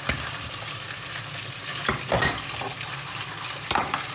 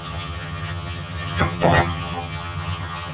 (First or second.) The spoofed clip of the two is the second